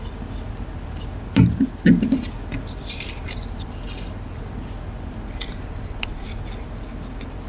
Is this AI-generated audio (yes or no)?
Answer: no